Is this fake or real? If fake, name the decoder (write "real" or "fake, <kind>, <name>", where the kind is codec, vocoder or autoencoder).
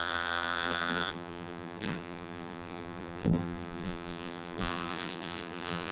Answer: fake, vocoder, BigVGAN v2